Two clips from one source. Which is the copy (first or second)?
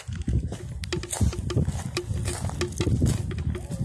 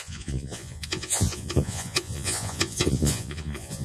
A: second